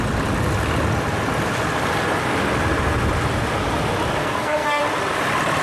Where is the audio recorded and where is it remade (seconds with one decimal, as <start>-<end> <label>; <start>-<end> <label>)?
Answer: 0.0-4.2 recorded; 4.2-4.8 remade; 4.8-5.6 recorded